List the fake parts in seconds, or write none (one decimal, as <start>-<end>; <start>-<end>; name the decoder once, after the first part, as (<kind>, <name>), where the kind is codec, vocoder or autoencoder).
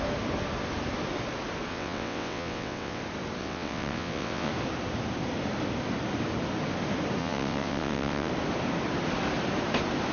1.7-3.0 (vocoder, WaveNeXt); 3.4-4.5; 7.2-8.3